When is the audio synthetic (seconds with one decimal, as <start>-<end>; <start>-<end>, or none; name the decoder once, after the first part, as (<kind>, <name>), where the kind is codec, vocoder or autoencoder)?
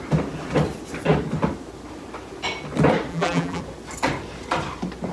3.1-3.6 (vocoder, BigVGAN v2)